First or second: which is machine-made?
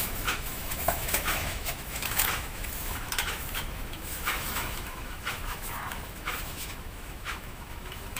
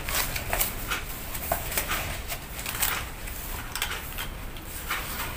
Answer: first